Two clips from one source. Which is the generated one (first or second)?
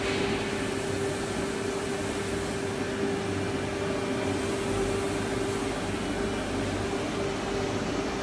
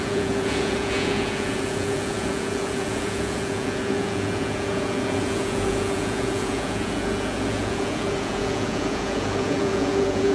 second